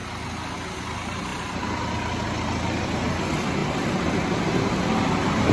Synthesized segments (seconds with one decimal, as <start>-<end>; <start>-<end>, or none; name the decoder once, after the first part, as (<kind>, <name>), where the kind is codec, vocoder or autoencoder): none

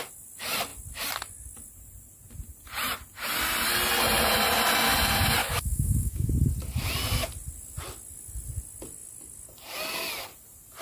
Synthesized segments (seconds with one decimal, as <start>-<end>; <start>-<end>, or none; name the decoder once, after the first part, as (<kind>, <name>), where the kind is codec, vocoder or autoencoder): 5.4-6.3 (autoencoder, DAC-VAE)

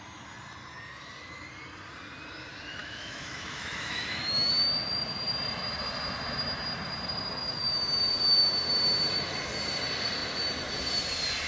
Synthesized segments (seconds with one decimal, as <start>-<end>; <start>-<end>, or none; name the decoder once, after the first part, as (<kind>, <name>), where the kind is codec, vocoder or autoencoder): 2.8-4.5 (autoencoder, DAC-VAE)

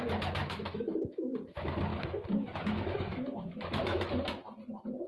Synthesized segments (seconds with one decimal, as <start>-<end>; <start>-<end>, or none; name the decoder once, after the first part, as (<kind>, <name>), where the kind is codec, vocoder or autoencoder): 0.4-1.0 (autoencoder, DAC-VAE); 1.9-4.1

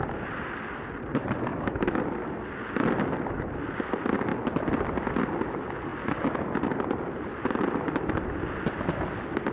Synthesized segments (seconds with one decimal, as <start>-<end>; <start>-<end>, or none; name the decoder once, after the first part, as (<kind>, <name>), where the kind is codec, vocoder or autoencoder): 1.5-2.0 (autoencoder, DAC-VAE)

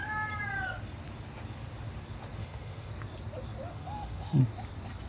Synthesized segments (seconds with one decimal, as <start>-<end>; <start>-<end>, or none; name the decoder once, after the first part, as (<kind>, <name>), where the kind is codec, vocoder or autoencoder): 2.4-2.9 (autoencoder, DAC-VAE); 3.7-4.4